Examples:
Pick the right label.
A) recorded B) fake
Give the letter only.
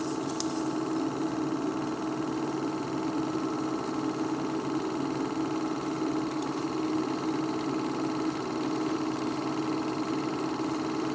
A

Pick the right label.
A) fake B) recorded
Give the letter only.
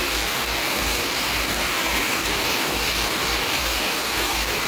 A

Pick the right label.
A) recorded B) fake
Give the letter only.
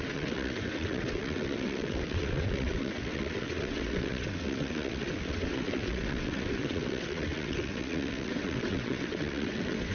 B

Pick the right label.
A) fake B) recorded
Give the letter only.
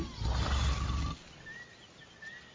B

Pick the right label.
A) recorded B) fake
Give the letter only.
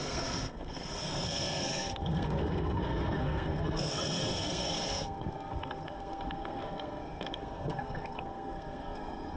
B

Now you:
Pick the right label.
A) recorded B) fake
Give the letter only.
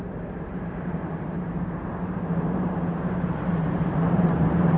B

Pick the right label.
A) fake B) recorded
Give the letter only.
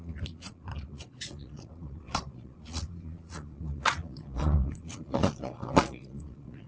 A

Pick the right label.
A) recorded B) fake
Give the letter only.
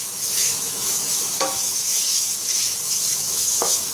B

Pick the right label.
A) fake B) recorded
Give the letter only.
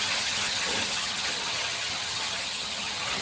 A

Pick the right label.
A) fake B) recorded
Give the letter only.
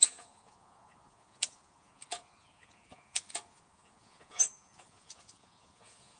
A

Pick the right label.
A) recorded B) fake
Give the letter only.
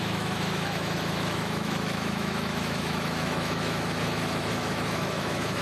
B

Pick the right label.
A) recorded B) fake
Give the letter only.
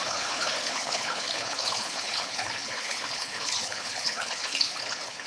B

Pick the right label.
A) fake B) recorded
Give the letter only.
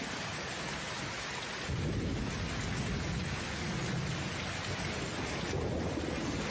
B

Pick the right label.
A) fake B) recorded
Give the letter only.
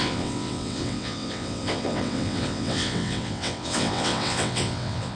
A